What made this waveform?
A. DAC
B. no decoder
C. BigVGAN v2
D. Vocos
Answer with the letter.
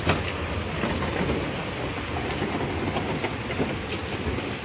B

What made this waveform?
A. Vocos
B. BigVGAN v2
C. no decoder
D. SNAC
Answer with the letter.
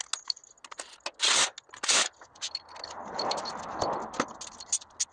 C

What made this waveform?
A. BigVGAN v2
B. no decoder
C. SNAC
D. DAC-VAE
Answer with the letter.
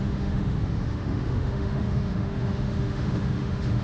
D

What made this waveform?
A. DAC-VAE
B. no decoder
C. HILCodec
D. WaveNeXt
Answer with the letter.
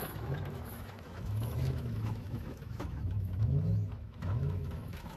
A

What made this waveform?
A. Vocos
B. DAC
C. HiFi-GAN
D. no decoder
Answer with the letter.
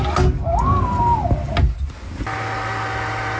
D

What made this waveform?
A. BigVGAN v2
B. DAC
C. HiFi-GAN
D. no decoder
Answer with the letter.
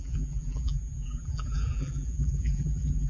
A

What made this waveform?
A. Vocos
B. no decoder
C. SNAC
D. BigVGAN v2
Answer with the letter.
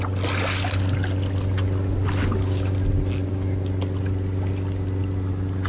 B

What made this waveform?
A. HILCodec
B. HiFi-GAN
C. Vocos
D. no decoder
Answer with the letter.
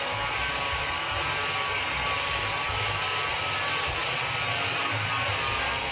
D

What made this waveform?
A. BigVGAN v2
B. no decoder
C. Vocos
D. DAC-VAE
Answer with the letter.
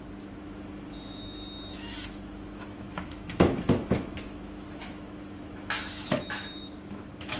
D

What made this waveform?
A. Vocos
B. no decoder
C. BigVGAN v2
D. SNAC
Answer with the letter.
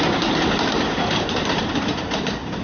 C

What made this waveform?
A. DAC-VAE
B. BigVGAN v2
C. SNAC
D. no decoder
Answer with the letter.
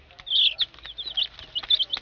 D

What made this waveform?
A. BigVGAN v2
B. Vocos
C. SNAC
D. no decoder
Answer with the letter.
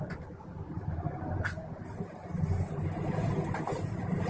D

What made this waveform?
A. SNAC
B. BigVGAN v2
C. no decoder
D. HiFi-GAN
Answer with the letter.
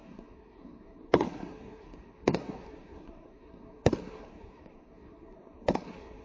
A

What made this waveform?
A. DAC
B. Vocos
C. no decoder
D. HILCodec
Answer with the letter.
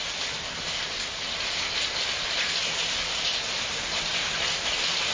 C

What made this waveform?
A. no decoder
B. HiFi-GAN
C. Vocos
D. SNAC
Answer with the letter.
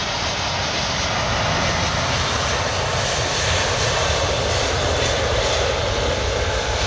A